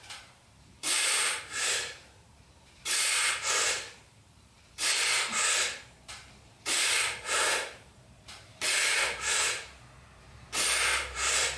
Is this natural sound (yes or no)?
no